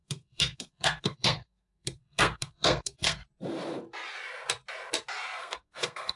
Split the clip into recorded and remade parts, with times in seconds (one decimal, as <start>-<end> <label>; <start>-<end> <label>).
0.0-3.2 remade; 3.2-5.4 recorded; 5.4-6.2 remade